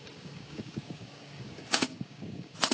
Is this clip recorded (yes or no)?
no